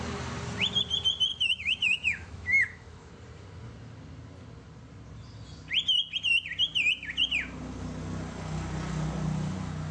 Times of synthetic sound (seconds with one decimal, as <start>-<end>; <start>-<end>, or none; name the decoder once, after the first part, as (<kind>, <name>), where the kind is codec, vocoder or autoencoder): 1.3-3.1 (autoencoder, DAC-VAE)